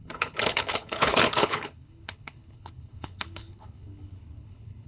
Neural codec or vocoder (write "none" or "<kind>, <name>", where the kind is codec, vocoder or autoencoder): codec, HILCodec